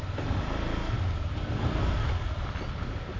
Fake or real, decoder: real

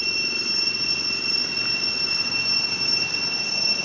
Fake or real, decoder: real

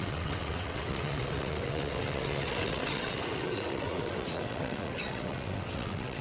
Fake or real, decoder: fake, vocoder, WaveNeXt